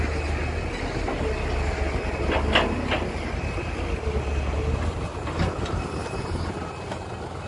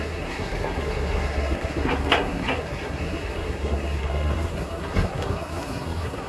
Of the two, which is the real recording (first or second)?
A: first